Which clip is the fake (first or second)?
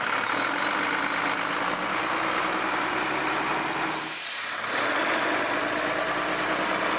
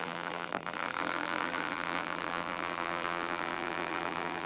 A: second